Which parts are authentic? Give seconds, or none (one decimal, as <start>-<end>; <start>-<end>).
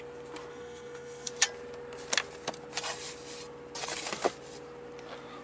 0.0-0.5; 1.3-5.4